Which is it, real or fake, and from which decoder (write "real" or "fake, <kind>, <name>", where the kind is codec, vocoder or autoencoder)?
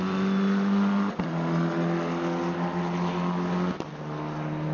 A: real